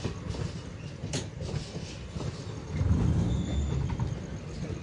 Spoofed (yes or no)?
no